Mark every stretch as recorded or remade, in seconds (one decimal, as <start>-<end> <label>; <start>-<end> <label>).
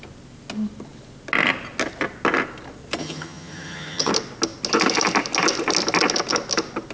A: 0.0-3.0 recorded; 3.0-4.1 remade; 4.1-6.9 recorded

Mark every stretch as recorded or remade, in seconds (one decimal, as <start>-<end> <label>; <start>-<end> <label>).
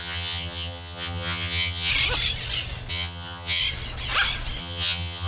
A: 0.0-1.9 remade; 1.9-2.9 recorded; 2.9-3.6 remade; 3.6-4.6 recorded; 4.6-5.3 remade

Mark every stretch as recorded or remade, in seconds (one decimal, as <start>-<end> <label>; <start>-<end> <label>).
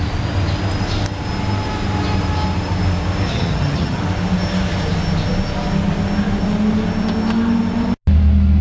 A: 0.0-3.3 recorded; 3.3-4.0 remade; 4.0-8.6 recorded